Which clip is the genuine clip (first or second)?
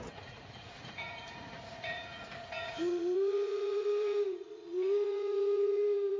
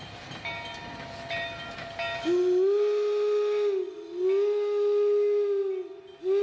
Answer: second